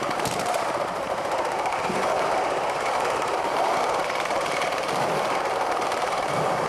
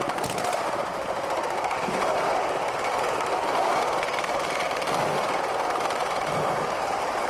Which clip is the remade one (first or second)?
first